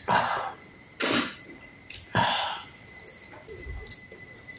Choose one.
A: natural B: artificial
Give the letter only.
A